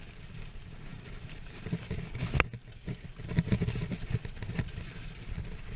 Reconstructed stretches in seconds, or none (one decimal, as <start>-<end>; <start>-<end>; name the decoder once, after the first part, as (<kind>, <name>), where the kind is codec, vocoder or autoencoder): none